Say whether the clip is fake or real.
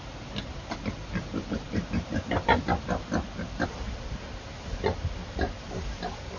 real